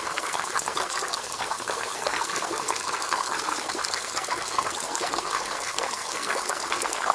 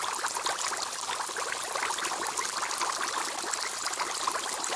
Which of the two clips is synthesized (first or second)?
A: first